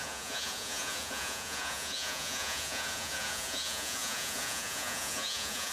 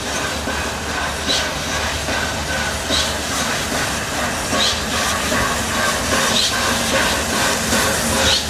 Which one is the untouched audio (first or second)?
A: second